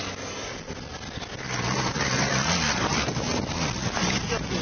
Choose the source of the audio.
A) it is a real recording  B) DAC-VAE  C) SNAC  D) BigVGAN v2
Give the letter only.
A